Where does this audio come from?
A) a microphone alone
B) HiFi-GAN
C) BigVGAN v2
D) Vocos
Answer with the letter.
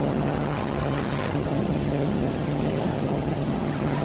B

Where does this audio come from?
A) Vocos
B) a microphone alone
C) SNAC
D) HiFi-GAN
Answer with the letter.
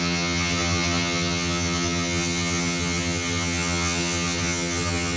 D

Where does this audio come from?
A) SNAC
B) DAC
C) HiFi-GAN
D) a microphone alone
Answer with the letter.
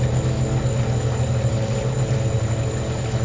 D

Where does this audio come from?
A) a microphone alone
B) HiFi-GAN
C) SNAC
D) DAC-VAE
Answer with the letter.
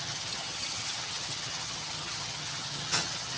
B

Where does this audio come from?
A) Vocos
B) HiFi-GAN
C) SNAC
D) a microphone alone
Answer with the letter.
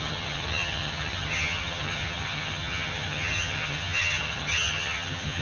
B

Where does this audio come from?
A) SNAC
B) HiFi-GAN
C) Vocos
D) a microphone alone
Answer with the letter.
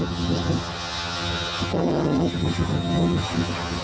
B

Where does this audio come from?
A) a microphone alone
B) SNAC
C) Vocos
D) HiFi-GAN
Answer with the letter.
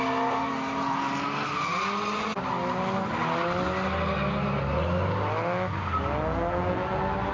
A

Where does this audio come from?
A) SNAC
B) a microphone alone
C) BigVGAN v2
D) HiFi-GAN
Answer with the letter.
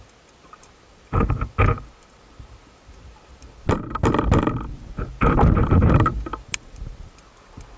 B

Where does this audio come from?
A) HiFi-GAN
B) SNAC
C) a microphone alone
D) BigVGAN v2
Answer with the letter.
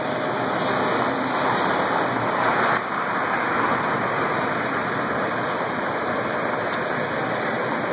C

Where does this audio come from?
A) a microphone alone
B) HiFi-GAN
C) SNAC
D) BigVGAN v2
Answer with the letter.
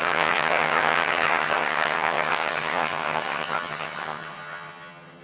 B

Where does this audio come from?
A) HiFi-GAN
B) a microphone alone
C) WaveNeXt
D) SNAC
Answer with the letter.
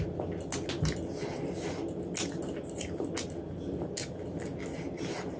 B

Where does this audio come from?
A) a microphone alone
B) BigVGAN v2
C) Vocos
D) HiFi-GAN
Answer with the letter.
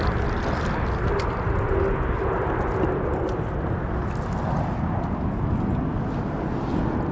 A